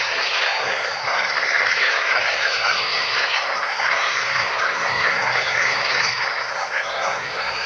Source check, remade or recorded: remade